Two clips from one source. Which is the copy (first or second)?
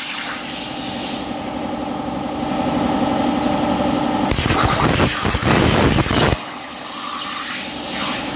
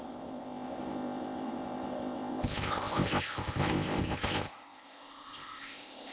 second